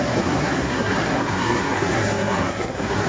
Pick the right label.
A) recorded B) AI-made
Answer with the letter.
B